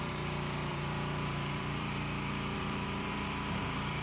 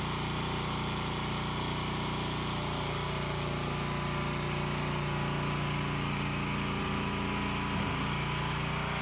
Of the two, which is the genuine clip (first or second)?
second